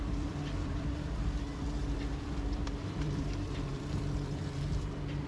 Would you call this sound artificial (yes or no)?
yes